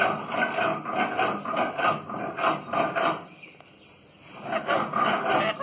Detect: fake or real real